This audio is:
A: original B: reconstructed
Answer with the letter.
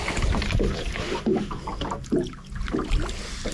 A